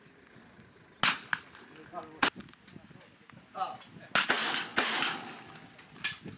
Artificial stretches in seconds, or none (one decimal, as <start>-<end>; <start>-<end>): none